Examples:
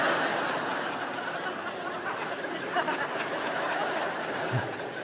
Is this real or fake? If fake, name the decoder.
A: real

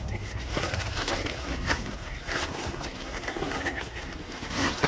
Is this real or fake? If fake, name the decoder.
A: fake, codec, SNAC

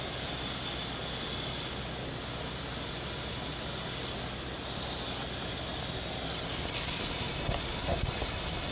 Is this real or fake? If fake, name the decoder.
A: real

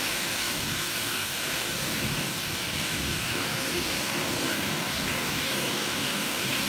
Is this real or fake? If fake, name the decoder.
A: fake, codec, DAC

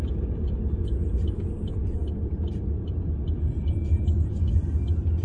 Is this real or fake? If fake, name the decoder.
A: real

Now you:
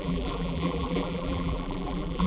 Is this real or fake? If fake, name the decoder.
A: fake, vocoder, BigVGAN v2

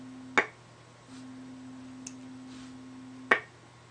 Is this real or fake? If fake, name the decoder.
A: real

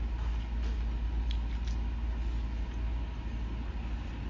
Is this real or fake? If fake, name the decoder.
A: real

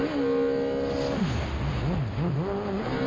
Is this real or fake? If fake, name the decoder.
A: real